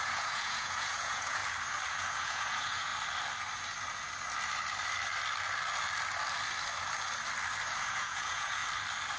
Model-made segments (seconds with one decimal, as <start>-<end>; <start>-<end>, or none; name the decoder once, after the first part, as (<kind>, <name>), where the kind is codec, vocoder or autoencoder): 0.0-1.4 (vocoder, Vocos); 1.9-2.9; 7.8-8.6